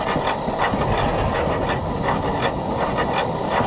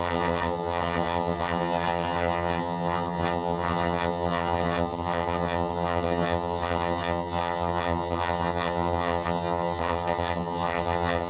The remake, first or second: second